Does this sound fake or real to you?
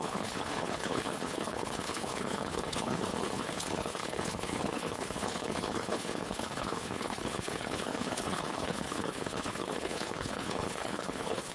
fake